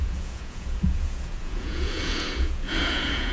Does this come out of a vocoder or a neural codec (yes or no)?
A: yes